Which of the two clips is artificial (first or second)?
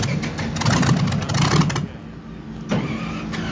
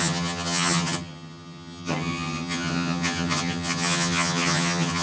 second